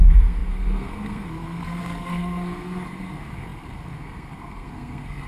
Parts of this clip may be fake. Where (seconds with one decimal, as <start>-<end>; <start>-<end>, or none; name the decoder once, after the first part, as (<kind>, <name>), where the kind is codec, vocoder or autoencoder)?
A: 0.0-5.3 (codec, SNAC)

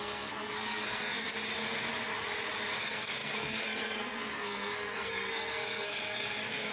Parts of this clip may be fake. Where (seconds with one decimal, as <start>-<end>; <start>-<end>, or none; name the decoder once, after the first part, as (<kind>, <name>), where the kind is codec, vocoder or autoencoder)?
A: 0.0-1.3 (codec, SNAC); 2.8-6.7

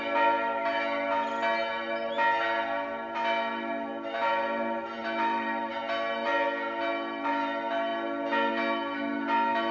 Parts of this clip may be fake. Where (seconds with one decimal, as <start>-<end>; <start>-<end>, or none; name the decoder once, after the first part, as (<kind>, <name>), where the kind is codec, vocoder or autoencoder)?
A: 5.0-5.7 (vocoder, BigVGAN v2)